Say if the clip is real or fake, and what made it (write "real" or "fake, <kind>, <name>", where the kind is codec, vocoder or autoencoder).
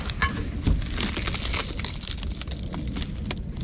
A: real